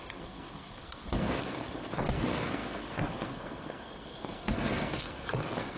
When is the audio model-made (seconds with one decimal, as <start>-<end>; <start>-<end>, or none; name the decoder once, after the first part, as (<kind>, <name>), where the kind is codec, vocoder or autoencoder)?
0.0-5.8 (codec, SNAC)